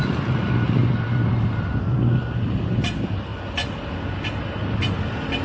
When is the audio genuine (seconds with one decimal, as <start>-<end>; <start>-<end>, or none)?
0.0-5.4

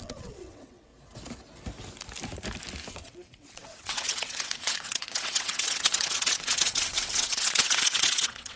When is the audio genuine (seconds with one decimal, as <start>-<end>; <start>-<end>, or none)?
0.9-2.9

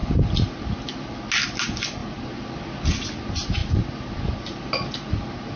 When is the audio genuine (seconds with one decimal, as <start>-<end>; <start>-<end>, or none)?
0.0-5.6